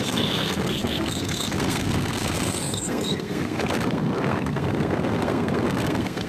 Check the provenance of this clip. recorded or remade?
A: remade